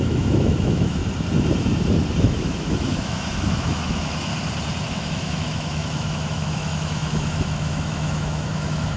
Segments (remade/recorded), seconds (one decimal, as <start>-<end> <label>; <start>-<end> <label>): 0.0-1.0 remade; 1.0-2.2 recorded; 2.2-4.3 remade; 4.3-4.9 recorded; 4.9-9.0 remade